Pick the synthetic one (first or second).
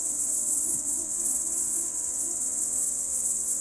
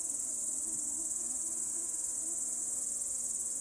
first